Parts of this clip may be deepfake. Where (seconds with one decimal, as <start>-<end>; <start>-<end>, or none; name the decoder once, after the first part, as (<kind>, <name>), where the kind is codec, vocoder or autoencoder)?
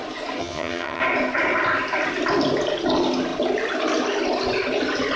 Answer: 0.4-1.0 (vocoder, HiFi-GAN)